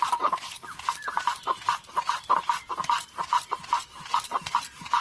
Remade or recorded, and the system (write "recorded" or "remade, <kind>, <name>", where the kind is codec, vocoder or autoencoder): recorded